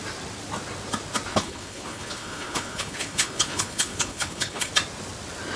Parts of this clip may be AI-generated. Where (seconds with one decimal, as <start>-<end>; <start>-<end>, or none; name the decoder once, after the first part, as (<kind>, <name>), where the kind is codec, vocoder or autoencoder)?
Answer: 1.3-4.7 (codec, HILCodec)